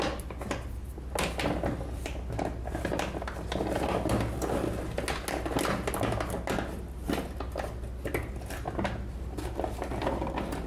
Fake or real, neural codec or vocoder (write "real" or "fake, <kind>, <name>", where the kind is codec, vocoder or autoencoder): real